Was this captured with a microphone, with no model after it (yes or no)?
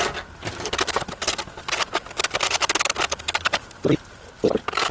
yes